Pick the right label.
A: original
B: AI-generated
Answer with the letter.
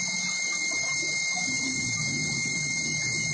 A